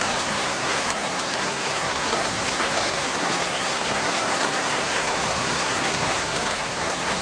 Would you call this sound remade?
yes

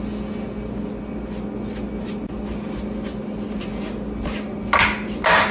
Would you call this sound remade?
no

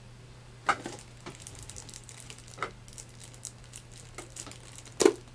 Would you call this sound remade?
no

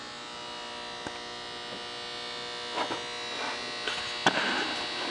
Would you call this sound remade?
no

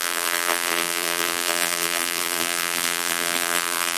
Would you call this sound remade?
yes